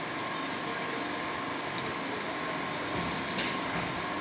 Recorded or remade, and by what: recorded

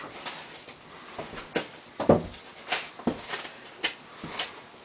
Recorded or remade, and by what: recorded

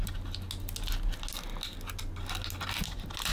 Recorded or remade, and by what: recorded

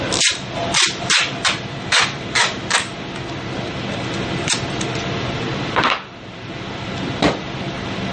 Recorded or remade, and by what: recorded